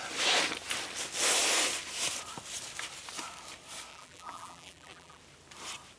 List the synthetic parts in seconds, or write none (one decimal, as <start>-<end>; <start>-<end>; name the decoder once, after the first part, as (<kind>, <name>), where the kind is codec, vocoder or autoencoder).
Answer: 3.9-5.2 (vocoder, BigVGAN v2)